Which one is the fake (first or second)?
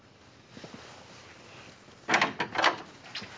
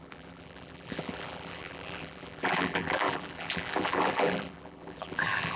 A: second